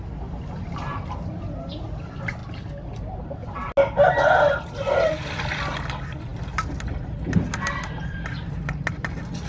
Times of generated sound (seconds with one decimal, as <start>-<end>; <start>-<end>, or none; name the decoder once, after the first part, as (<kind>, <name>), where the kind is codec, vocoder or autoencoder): none